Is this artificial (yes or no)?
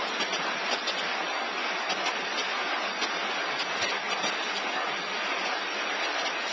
no